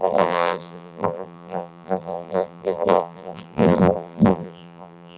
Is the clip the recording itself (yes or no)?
no